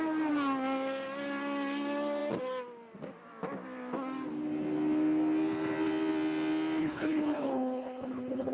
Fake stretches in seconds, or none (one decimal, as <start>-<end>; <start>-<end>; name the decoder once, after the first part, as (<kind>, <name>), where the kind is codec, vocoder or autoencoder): 6.8-8.5 (codec, HILCodec)